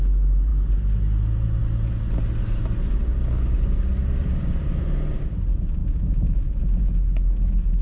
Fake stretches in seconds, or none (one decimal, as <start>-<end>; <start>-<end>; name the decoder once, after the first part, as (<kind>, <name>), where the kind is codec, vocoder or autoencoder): 5.8-6.6 (autoencoder, DAC-VAE)